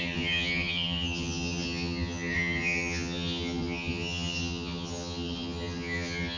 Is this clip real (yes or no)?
no